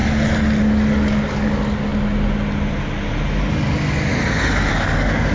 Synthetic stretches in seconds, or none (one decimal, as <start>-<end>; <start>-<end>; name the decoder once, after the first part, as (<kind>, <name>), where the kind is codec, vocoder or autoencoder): 0.6-1.9 (codec, DAC); 3.5-4.1; 4.7-5.3